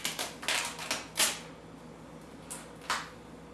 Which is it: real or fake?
real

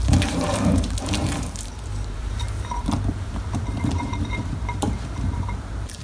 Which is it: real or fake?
fake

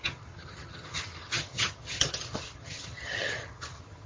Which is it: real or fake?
fake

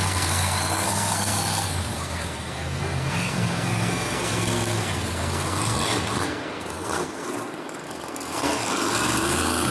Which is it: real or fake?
fake